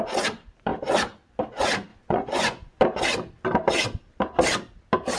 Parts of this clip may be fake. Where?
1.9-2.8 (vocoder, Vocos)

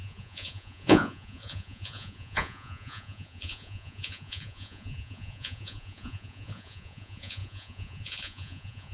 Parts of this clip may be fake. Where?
0.0-8.9 (vocoder, Vocos)

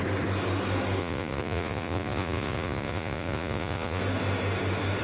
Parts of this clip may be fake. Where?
1.0-4.0 (vocoder, Vocos)

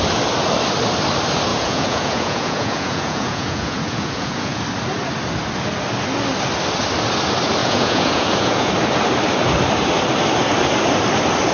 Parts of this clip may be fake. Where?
1.5-4.6 (vocoder, Vocos); 7.6-8.7

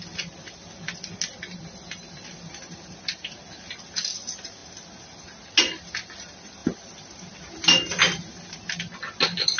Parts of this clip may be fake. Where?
none

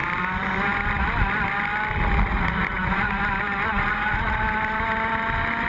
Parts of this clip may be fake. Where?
2.3-3.2 (vocoder, Vocos); 3.7-4.4